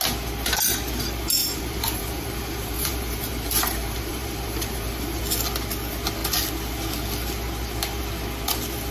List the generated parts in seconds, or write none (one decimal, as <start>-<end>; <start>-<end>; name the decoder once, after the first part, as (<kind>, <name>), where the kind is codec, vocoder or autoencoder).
1.4-5.2 (vocoder, BigVGAN v2)